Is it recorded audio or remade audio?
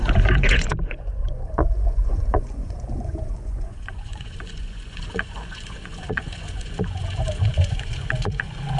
remade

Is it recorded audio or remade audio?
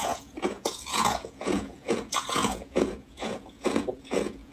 remade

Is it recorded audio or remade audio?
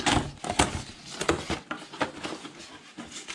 recorded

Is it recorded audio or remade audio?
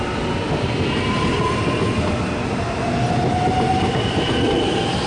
recorded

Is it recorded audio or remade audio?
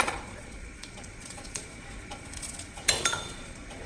remade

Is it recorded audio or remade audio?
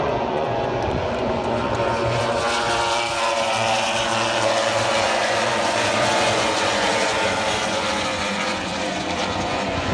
remade